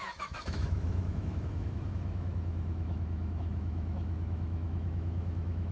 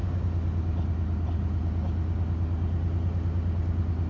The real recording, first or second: second